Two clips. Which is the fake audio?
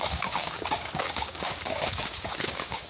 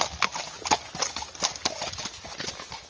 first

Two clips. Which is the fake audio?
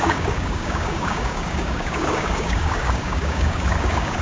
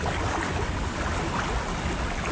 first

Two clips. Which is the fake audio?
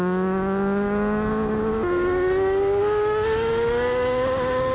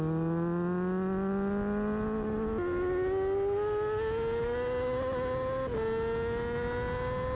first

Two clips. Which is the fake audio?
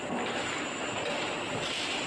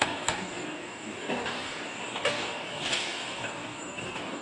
second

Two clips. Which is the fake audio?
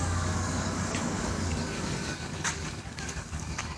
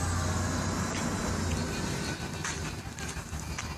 first